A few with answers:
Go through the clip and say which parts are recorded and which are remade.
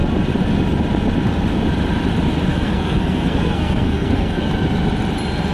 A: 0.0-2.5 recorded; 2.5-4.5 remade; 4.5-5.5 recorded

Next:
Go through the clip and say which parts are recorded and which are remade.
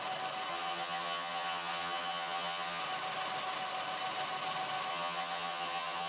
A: 0.0-0.5 recorded; 0.5-2.8 remade; 2.8-4.9 recorded; 4.9-6.1 remade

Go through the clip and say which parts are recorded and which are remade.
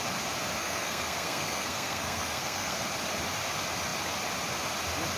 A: 0.0-0.6 recorded; 0.6-2.8 remade; 2.8-5.2 recorded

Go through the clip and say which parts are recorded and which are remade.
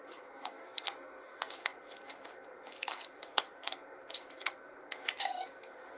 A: 0.0-6.0 remade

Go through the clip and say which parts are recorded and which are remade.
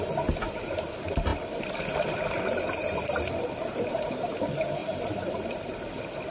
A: 0.0-6.3 remade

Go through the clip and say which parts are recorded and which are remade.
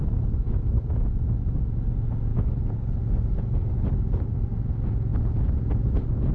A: 0.0-2.3 recorded; 2.3-3.0 remade; 3.0-6.3 recorded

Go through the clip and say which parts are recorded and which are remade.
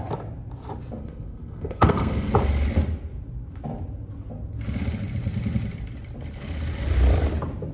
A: 0.0-1.0 recorded; 1.0-2.3 remade; 2.3-7.7 recorded